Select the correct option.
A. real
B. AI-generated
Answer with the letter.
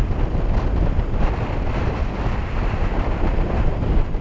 A